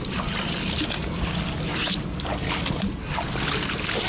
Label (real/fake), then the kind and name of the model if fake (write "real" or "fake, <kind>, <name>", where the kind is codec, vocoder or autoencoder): real